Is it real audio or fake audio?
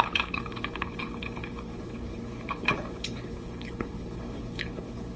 fake